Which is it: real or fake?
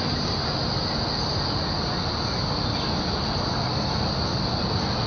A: real